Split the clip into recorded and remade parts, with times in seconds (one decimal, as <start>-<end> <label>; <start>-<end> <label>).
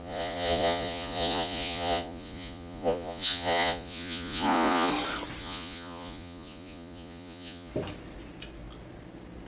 0.0-4.9 remade; 4.9-5.4 recorded; 5.4-7.7 remade; 7.7-9.5 recorded